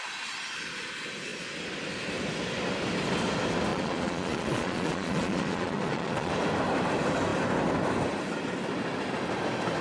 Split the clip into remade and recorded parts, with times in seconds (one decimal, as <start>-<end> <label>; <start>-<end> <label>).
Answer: 0.0-3.7 recorded; 3.7-6.3 remade; 6.3-9.8 recorded